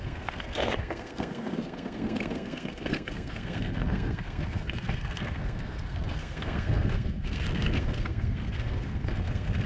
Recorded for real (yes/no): no